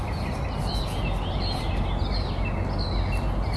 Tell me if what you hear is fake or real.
real